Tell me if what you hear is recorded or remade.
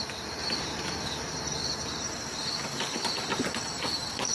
remade